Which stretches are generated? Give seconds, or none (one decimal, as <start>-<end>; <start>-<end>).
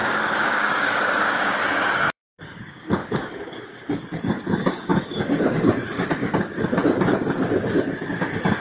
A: 0.0-8.6